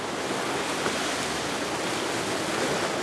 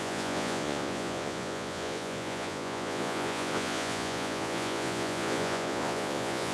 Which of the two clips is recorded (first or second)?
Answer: first